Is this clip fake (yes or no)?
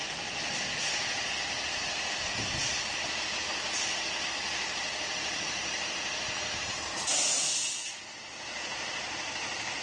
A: no